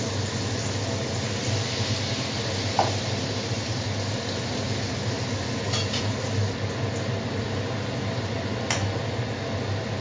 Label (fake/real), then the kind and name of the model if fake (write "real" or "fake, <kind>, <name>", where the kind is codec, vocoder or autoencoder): real